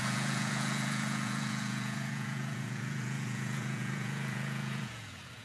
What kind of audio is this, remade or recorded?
remade